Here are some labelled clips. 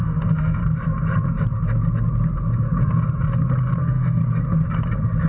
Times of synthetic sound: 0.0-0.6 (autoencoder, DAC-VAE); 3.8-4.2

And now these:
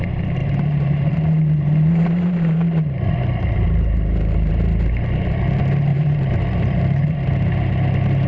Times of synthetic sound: 0.4-4.5 (vocoder, BigVGAN v2); 5.9-7.3